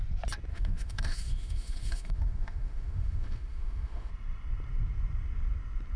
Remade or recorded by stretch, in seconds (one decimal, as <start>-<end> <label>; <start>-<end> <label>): 0.0-0.5 recorded; 0.5-4.1 remade; 4.1-6.0 recorded